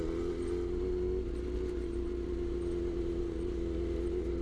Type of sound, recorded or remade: recorded